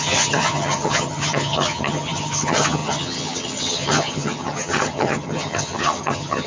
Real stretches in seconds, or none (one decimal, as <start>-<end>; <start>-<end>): none

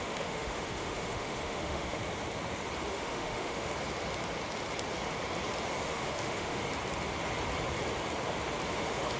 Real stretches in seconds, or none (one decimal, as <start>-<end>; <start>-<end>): 2.0-2.9; 3.7-5.8; 6.6-8.7

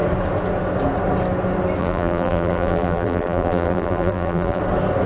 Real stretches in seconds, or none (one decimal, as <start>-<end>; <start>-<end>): 0.0-1.8; 4.6-5.1

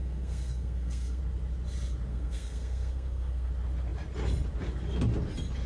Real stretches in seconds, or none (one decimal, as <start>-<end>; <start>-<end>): 1.2-2.1; 3.5-5.7

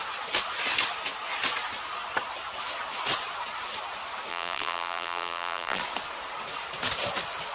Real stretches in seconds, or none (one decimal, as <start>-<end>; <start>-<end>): 0.0-4.3; 5.8-7.5

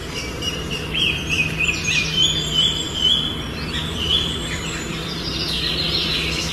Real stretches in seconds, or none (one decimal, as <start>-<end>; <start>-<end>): none

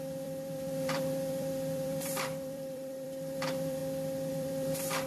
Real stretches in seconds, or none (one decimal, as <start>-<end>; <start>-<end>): 3.8-4.3